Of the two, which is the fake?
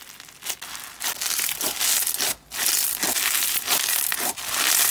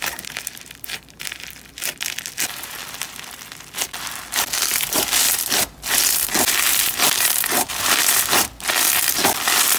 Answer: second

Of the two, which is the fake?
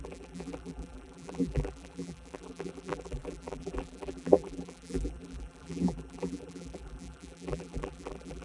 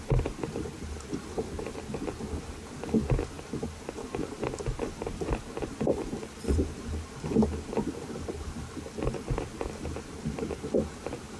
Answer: first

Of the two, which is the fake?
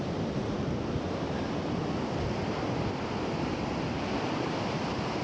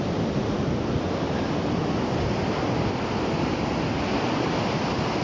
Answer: first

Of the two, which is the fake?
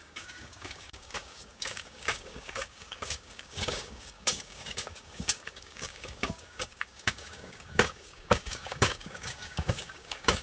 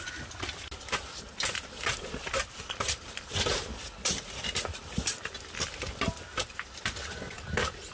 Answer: first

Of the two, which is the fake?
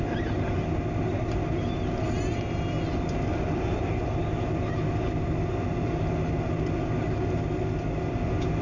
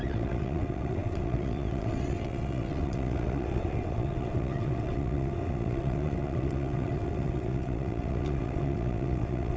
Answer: second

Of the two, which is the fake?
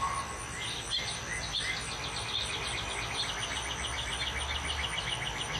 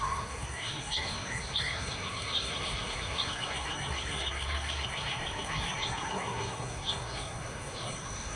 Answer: second